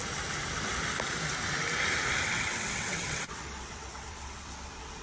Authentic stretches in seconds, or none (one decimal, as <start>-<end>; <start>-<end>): 0.0-2.2